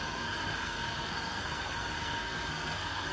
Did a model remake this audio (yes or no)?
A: yes